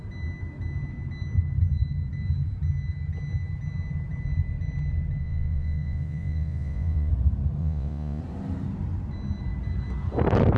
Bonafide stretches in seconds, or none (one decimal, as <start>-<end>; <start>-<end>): 0.0-5.2; 7.1-7.6; 8.2-10.6

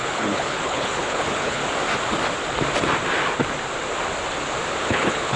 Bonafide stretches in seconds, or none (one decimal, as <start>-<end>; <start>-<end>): 1.6-4.8

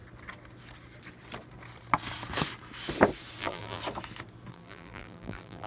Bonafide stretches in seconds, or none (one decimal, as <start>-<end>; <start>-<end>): 0.0-3.4; 3.8-4.5

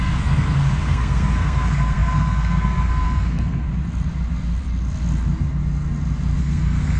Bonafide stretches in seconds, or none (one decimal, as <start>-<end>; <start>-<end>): 3.7-6.4

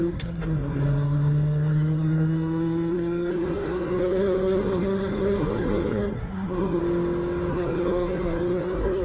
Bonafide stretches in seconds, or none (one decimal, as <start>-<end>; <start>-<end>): 6.8-7.5

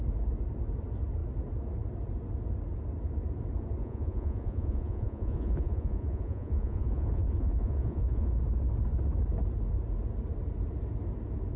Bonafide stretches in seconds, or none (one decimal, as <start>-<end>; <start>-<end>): 0.0-3.8; 8.4-11.6

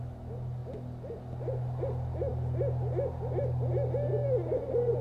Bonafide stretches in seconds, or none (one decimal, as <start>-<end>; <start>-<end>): 0.0-5.0